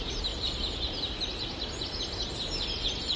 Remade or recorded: recorded